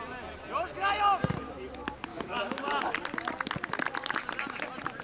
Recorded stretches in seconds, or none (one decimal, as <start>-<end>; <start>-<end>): 0.0-2.1; 2.8-5.0